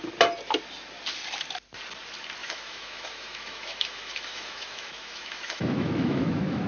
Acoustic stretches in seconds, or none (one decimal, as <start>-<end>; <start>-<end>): 0.0-2.4